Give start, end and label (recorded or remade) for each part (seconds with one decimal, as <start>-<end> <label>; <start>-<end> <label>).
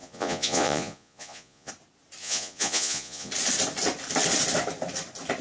0.0-1.7 remade; 1.7-2.2 recorded; 2.2-3.3 remade; 3.3-5.4 recorded